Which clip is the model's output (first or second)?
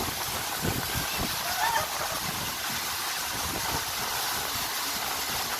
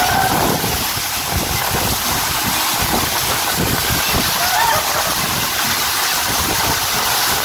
second